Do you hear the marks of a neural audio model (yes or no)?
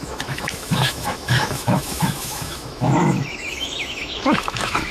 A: yes